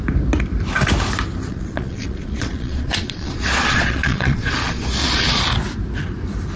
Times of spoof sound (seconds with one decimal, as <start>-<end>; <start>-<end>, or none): 1.5-5.4